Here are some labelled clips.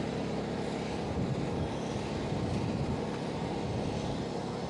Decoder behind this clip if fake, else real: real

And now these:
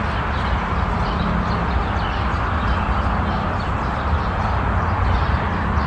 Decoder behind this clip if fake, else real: real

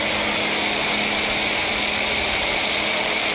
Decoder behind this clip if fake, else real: real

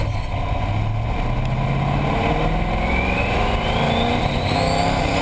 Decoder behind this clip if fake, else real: real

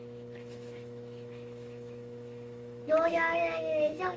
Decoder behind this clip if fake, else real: fake, autoencoder, DAC-VAE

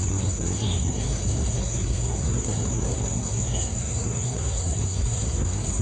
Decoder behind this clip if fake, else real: fake, codec, SNAC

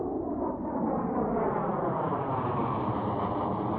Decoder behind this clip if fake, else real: fake, vocoder, BigVGAN v2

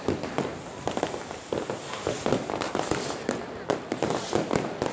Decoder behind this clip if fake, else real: real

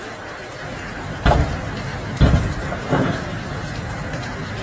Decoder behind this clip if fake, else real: real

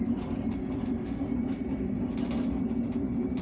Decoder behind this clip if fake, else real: fake, vocoder, BigVGAN v2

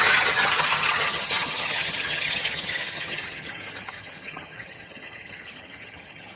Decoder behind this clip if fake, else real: fake, vocoder, HiFi-GAN